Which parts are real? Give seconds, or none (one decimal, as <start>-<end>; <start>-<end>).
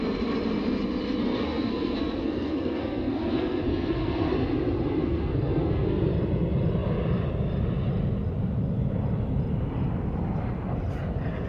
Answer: 0.0-1.2; 4.3-5.0; 6.0-11.5